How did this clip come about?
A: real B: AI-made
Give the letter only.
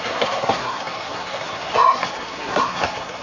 B